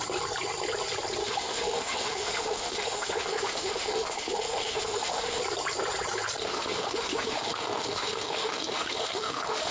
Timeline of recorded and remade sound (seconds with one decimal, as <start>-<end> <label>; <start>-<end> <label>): 0.0-1.2 recorded; 1.2-5.4 remade; 5.4-6.4 recorded; 6.4-9.7 remade